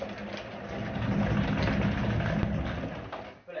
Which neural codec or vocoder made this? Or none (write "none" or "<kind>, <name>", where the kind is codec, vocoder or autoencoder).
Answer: none